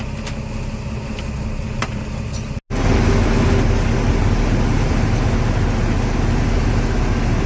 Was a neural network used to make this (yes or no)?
no